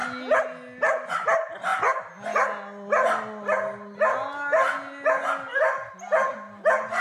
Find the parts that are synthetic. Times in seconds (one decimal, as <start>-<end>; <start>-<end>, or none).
none